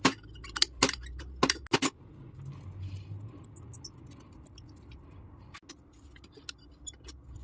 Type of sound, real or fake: real